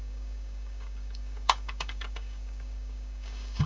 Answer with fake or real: fake